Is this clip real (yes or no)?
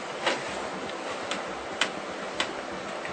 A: yes